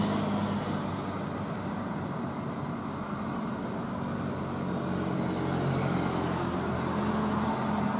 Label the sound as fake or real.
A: real